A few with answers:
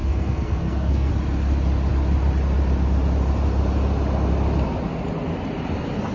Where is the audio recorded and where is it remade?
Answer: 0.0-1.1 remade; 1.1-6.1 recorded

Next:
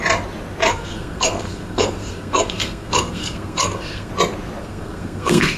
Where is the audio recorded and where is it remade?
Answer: 0.0-0.7 recorded; 0.7-4.1 remade; 4.1-4.6 recorded; 4.6-5.6 remade

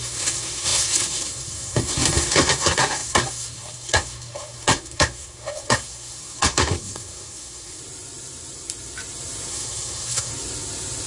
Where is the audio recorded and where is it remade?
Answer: 0.0-7.8 remade; 7.8-9.5 recorded; 9.5-10.3 remade; 10.3-11.1 recorded

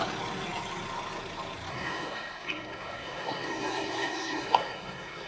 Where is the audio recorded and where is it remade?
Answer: 0.0-1.7 recorded; 1.7-5.3 remade

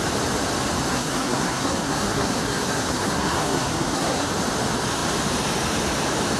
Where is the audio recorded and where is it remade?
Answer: 0.0-0.9 recorded; 0.9-4.3 remade; 4.3-6.4 recorded

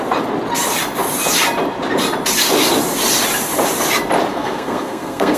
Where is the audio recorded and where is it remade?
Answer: 0.0-4.3 recorded; 4.3-5.4 remade

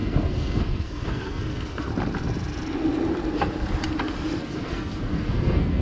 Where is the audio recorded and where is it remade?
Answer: 0.0-1.9 remade; 1.9-4.4 recorded; 4.4-5.8 remade

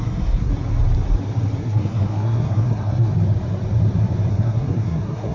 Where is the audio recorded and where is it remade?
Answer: 0.0-0.5 remade; 0.5-1.6 recorded; 1.6-3.1 remade; 3.1-4.3 recorded; 4.3-5.3 remade